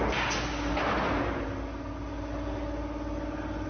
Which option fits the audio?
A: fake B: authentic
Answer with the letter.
B